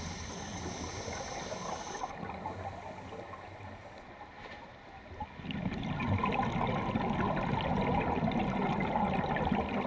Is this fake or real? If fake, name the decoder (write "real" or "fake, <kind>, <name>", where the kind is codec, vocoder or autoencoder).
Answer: real